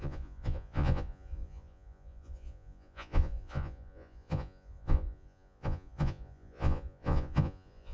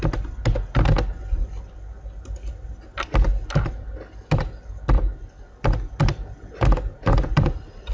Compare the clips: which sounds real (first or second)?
second